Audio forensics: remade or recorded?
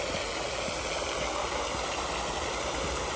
recorded